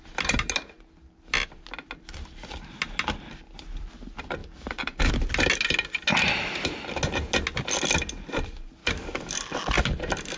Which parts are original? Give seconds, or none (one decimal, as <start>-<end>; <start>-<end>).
0.0-4.4; 5.1-8.8; 9.3-10.4